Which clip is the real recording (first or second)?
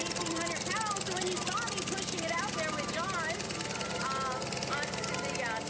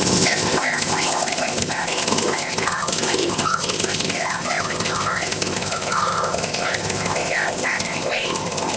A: first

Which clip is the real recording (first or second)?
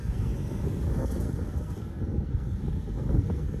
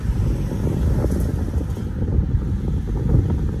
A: second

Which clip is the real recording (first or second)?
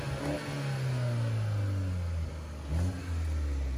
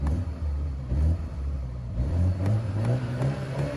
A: first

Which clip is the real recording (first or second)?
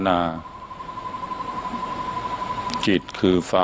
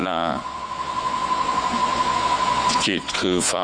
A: first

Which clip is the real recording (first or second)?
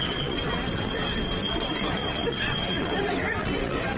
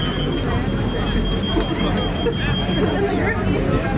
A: second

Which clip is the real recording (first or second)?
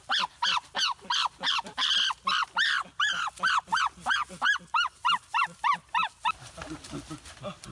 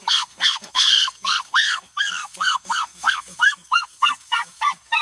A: first